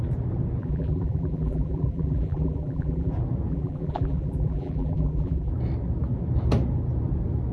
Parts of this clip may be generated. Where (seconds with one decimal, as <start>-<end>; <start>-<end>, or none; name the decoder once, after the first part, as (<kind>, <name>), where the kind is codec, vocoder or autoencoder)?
0.6-3.1 (vocoder, BigVGAN v2); 3.5-5.5